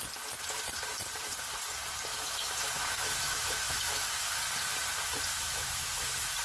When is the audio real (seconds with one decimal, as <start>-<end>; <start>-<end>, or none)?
0.0-2.1; 4.4-5.3; 6.0-6.4